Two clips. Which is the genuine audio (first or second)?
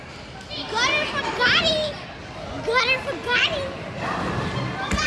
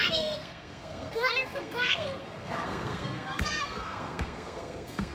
first